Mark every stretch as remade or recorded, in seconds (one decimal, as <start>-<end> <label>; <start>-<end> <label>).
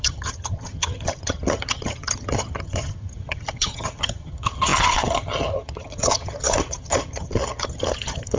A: 0.0-8.4 remade